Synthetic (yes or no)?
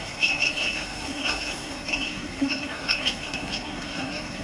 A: yes